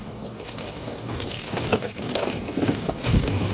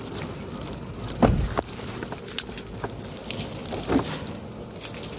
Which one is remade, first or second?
first